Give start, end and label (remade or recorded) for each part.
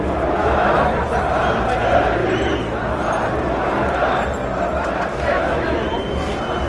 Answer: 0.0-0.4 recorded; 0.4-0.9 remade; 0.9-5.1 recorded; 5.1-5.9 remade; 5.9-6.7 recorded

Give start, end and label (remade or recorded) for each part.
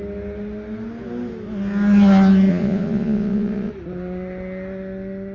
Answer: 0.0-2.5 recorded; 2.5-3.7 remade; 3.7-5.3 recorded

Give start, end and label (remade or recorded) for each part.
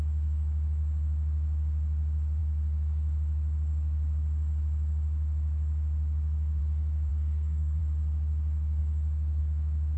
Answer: 0.0-7.1 recorded; 7.1-7.8 remade; 7.8-10.0 recorded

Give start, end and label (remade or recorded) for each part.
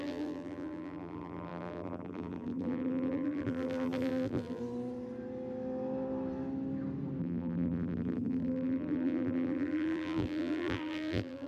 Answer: 0.0-4.6 remade; 4.6-7.2 recorded; 7.2-11.5 remade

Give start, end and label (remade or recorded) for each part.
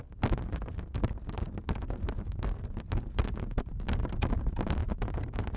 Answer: 0.0-5.6 recorded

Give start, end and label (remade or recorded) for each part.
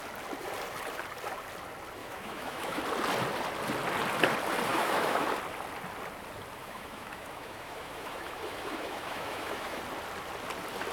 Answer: 0.0-2.0 recorded; 2.0-2.8 remade; 2.8-4.7 recorded; 4.7-5.2 remade; 5.2-6.6 recorded; 6.6-9.8 remade; 9.8-10.9 recorded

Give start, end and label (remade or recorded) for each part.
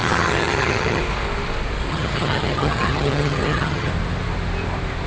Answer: 0.0-1.0 remade; 1.0-1.9 recorded; 1.9-3.9 remade; 3.9-5.1 recorded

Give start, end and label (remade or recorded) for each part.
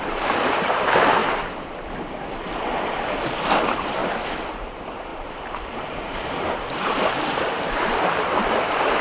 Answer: 0.0-1.2 remade; 1.2-2.2 recorded; 2.2-4.0 remade; 4.0-4.5 recorded; 4.5-9.0 remade